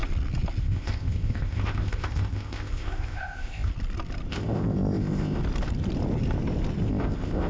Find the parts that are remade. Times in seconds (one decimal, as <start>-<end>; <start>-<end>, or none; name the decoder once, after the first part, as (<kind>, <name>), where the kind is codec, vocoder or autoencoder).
0.6-3.7 (codec, ZipCodec); 4.3-5.4; 6.9-7.5